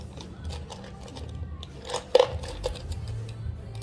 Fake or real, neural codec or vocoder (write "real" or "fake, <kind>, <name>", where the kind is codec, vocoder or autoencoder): real